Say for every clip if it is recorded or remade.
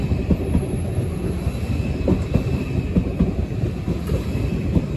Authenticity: remade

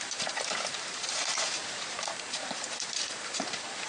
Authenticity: remade